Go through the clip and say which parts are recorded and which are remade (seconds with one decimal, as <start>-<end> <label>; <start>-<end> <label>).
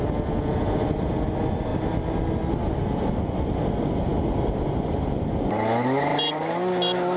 0.0-7.2 recorded